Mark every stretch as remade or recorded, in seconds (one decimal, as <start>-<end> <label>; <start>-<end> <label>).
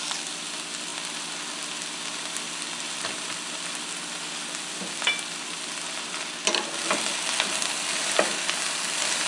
0.0-9.3 recorded